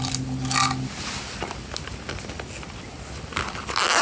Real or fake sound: real